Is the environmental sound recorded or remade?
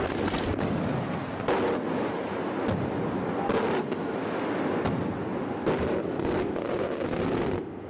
recorded